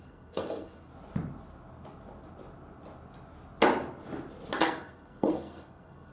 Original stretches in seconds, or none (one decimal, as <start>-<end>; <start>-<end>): 0.9-4.6